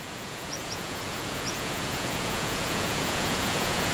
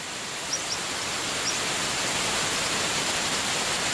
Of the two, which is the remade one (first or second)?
first